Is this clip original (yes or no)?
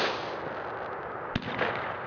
yes